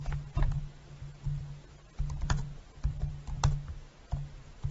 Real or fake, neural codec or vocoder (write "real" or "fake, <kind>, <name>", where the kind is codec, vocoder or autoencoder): real